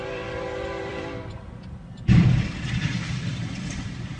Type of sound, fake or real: fake